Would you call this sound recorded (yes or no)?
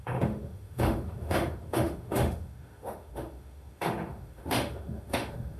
no